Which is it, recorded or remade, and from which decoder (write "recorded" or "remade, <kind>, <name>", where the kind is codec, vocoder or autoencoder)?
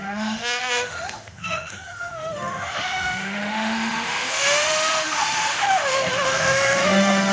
remade, autoencoder, DAC-VAE